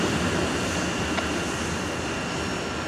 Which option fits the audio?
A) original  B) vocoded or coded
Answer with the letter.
A